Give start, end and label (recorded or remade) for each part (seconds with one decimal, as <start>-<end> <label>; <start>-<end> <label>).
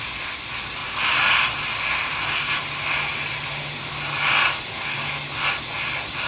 0.0-6.3 recorded